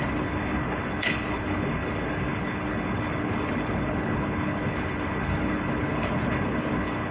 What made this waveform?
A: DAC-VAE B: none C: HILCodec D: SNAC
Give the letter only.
C